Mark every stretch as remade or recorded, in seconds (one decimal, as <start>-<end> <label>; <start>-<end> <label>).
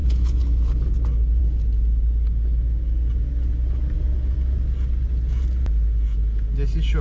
0.0-7.0 recorded